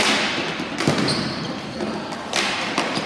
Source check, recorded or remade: recorded